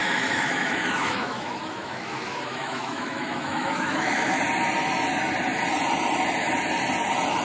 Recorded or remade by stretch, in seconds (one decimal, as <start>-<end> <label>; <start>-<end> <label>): 0.0-4.4 remade; 4.4-7.4 recorded